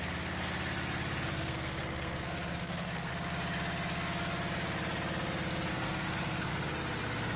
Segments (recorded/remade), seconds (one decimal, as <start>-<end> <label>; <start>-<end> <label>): 0.0-1.3 recorded; 1.3-3.1 remade; 3.1-5.7 recorded; 5.7-6.5 remade; 6.5-7.4 recorded